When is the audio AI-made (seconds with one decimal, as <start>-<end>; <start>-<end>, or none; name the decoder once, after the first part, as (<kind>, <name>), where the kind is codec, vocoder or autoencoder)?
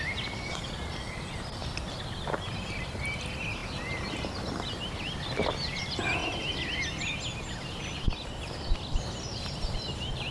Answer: 0.0-1.6 (vocoder, BigVGAN v2); 2.7-6.2; 8.6-10.3